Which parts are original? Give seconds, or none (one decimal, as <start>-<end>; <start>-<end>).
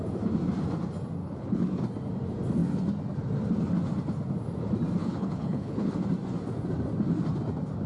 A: 0.0-1.2; 1.8-5.0; 6.0-7.9